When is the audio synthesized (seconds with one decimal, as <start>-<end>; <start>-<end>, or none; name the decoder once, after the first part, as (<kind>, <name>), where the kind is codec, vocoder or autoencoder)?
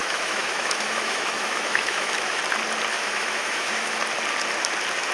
0.0-2.4 (autoencoder, DAC-VAE); 2.9-4.0